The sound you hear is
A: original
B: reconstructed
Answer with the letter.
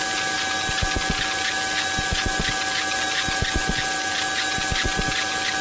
A